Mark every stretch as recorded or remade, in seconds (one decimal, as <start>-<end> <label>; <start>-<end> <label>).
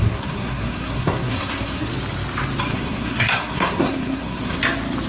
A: 0.0-1.9 remade; 1.9-2.7 recorded; 2.7-4.6 remade; 4.6-5.1 recorded